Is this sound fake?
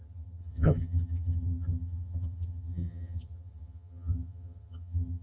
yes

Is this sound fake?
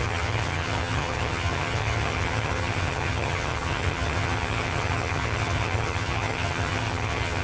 yes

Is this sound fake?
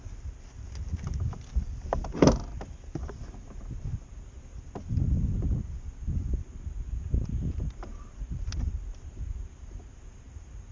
no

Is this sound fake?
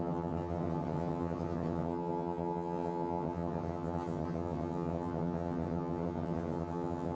yes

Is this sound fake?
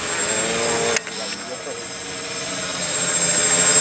no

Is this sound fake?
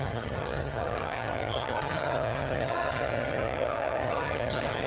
yes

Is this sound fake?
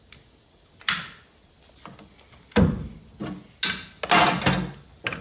no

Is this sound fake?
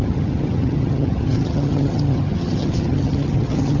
yes